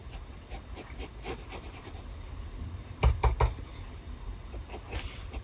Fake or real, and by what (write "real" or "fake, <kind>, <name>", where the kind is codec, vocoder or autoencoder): real